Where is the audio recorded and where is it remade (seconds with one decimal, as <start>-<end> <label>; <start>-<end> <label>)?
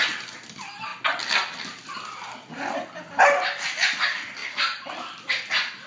0.0-5.9 recorded